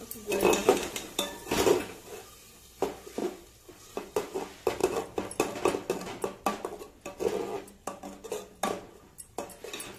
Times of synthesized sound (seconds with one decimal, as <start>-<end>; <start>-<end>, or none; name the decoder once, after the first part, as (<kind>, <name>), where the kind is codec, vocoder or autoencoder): 0.6-1.8 (vocoder, BigVGAN v2)

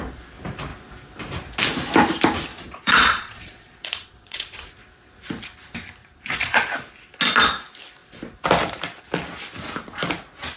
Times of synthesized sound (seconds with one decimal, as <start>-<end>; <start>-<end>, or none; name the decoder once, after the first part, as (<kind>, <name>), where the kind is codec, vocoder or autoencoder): 2.5-4.7 (vocoder, Vocos); 6.0-6.7

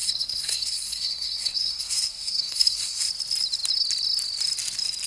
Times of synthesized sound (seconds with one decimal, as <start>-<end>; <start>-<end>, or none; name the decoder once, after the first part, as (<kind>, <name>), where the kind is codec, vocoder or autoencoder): 0.0-3.1 (codec, SNAC)

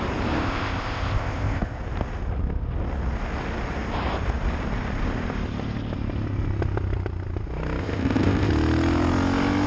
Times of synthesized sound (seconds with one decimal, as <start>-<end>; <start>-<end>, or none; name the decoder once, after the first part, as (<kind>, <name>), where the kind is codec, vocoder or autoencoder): 0.4-1.8 (codec, ZipCodec); 7.8-8.5